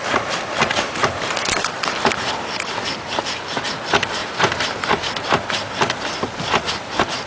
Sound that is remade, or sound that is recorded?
recorded